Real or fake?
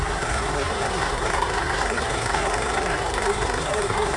fake